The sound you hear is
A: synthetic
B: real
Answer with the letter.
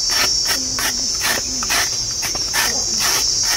B